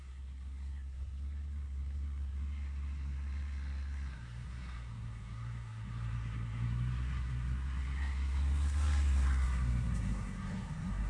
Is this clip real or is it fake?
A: fake